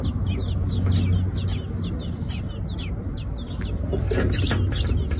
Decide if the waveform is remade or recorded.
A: recorded